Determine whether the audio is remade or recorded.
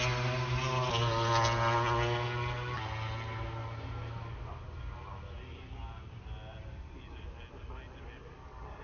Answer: recorded